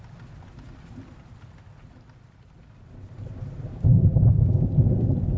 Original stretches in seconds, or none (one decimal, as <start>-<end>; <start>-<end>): 0.0-3.7; 4.7-5.4